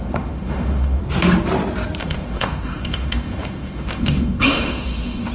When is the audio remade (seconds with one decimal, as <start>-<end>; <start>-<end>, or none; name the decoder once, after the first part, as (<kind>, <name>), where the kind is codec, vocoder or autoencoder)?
0.0-1.0 (autoencoder, DAC-VAE); 2.0-5.3